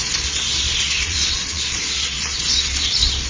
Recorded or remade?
remade